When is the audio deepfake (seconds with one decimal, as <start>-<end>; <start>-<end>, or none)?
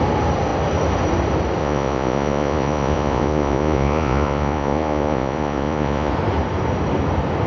1.6-6.1